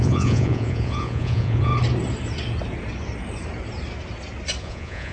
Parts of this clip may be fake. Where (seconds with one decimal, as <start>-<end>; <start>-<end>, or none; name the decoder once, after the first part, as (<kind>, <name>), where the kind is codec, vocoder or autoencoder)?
0.0-1.7 (vocoder, Vocos); 4.6-5.1